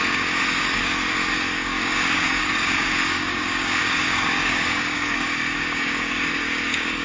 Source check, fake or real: fake